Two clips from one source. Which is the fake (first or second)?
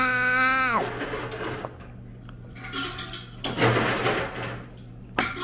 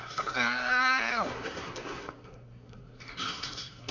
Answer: second